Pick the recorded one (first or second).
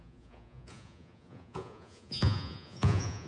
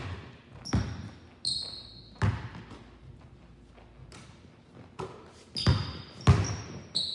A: second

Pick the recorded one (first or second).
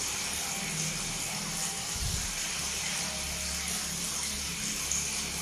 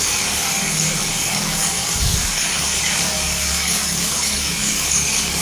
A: first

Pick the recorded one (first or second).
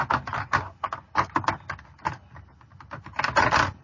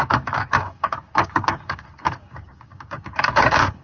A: first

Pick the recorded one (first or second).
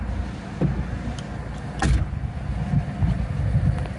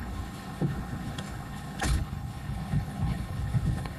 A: first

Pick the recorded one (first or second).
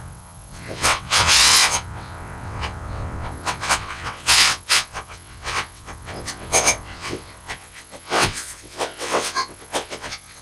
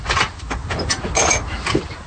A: second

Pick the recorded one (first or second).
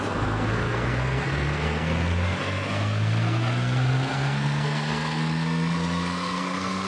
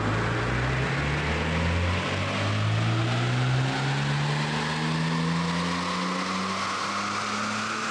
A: second